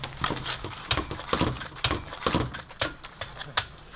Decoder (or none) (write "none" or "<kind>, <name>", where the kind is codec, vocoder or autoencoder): none